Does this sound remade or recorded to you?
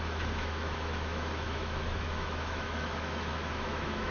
remade